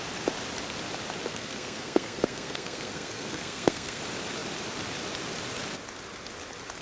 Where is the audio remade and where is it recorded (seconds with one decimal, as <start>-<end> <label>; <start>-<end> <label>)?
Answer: 0.0-1.3 recorded; 1.3-4.0 remade; 4.0-6.8 recorded